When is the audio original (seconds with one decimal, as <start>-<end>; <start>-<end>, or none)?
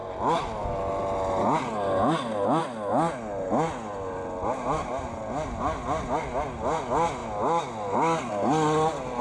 0.0-9.2